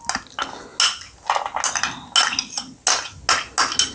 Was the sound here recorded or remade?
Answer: recorded